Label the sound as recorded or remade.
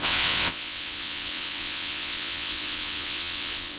remade